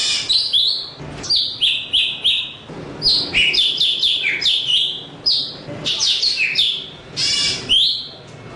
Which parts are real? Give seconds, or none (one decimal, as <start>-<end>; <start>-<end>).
0.0-8.6